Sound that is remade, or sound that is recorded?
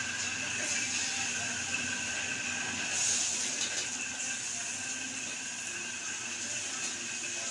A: recorded